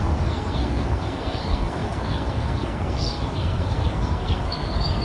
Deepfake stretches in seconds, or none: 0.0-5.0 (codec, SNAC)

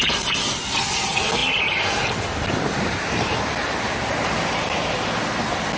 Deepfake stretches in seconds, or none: none

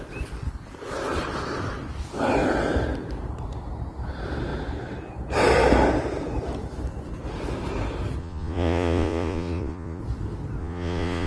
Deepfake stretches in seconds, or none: 8.2-10.0 (vocoder, Vocos); 10.6-11.3